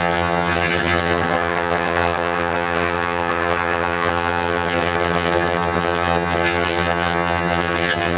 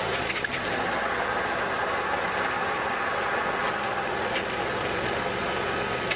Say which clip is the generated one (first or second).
first